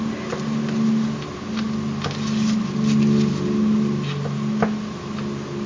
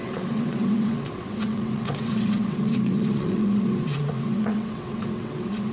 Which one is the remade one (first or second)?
second